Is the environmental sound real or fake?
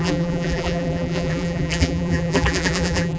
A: fake